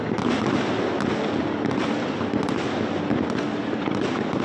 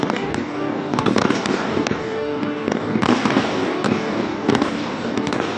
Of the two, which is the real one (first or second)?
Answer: first